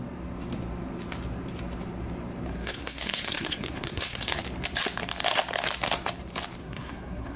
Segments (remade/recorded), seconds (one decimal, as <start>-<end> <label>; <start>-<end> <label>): 0.0-2.5 recorded; 2.5-4.4 remade; 4.4-6.6 recorded; 6.6-7.4 remade